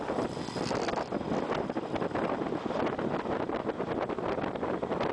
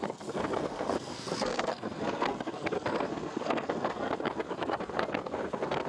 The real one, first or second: first